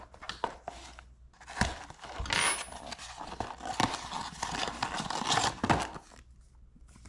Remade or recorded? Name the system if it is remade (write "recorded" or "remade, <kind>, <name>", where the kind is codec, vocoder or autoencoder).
recorded